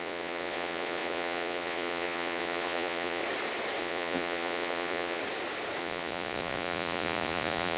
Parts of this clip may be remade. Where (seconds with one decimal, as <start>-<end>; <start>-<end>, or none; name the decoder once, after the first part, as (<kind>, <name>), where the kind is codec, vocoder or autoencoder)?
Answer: 0.0-3.2 (vocoder, Vocos); 3.8-5.2; 5.8-7.8